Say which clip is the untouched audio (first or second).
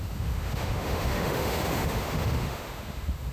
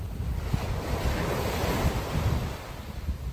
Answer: second